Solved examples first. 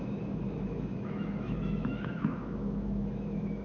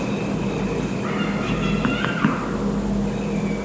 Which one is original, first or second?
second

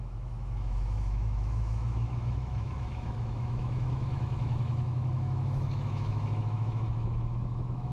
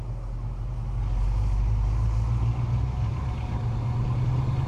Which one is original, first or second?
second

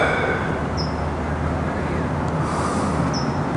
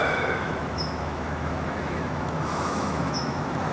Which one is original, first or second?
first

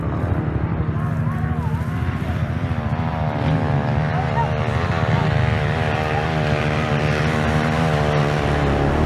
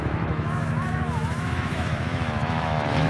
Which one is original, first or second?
first